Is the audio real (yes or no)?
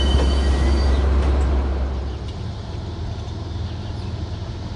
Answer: yes